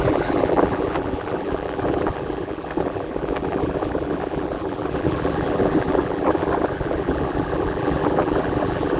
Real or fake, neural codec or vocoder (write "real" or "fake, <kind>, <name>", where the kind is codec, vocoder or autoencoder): fake, vocoder, BigVGAN v2